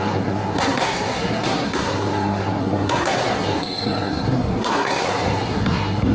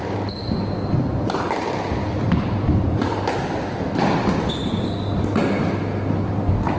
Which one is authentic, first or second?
second